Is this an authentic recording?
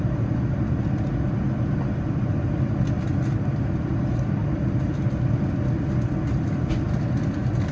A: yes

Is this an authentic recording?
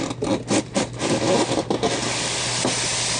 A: yes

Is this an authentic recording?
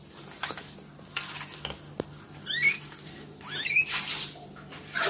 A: yes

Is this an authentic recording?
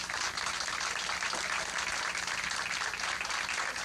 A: yes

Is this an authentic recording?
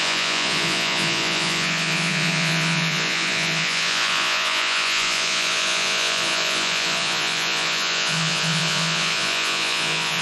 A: no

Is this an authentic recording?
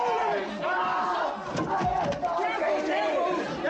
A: yes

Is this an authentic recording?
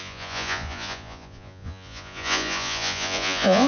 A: no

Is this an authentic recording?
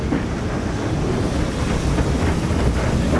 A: yes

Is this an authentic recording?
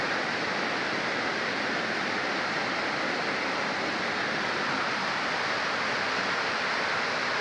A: yes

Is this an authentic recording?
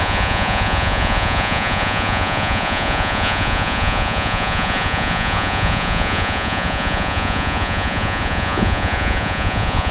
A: no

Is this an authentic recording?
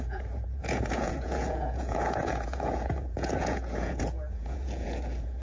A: no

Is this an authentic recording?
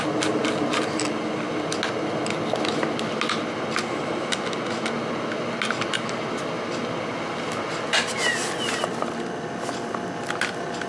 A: yes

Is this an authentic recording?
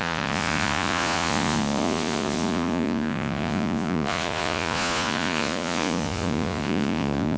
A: no